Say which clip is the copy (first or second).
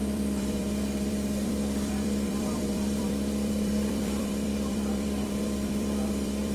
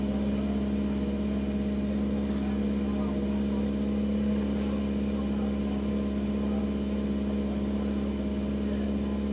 first